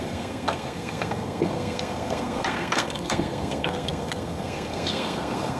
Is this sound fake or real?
fake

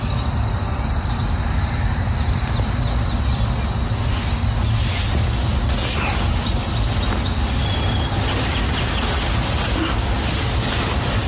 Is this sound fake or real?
real